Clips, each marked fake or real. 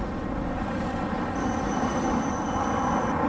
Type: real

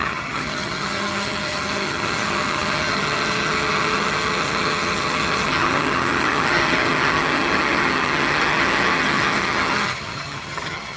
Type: fake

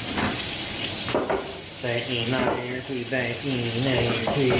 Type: real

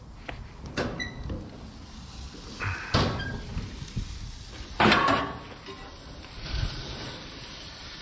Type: real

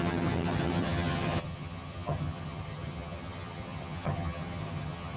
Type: fake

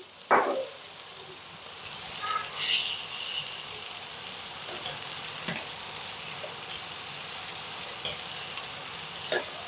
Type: real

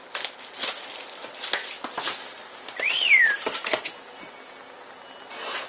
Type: real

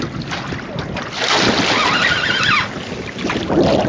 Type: real